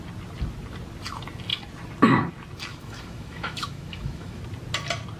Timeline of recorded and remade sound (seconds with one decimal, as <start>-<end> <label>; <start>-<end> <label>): 0.0-2.7 recorded; 2.7-4.4 remade; 4.4-5.2 recorded